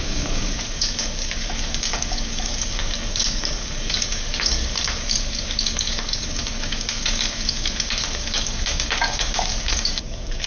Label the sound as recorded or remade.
remade